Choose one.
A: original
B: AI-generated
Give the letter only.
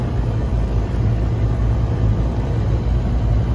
A